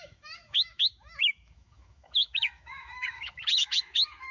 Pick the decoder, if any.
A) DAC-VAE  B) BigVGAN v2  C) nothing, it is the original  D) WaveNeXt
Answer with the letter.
A